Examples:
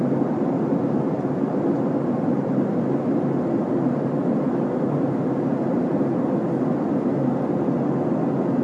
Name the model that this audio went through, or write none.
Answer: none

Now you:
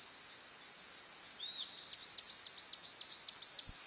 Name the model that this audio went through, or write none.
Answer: none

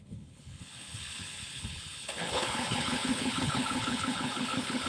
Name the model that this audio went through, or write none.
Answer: codec, HILCodec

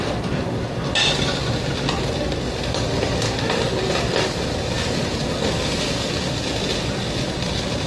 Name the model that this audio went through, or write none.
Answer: none